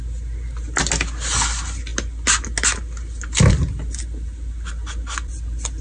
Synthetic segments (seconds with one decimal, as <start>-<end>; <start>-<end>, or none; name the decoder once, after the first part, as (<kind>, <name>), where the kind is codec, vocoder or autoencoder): none